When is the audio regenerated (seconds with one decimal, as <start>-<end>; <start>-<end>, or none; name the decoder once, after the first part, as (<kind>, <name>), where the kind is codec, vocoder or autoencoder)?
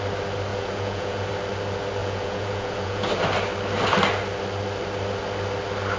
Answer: 0.5-1.3 (vocoder, Vocos); 2.0-3.1